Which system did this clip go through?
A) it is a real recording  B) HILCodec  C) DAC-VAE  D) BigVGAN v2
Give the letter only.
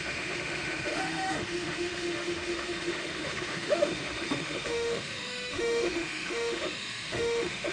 C